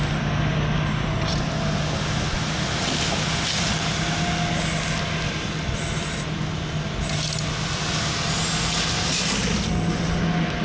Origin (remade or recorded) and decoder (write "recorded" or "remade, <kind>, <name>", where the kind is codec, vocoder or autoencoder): recorded